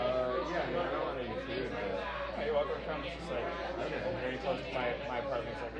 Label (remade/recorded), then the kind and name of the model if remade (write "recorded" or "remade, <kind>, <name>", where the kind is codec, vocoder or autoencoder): recorded